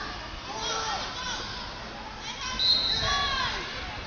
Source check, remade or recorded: recorded